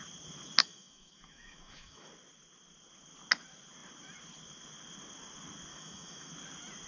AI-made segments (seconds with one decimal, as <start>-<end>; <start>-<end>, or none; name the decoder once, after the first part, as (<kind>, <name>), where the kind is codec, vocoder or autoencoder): 0.6-2.1 (autoencoder, DAC-VAE); 5.7-6.3